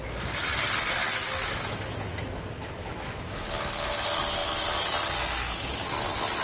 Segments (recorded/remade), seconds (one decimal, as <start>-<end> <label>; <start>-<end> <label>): 0.0-1.4 recorded; 1.4-3.4 remade; 3.4-6.4 recorded